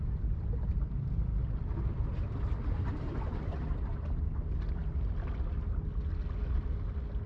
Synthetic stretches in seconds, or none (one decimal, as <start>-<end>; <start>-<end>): none